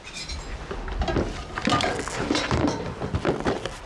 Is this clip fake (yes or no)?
no